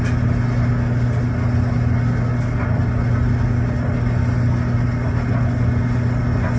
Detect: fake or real real